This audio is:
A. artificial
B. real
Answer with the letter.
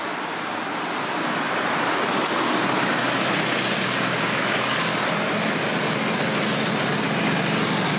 B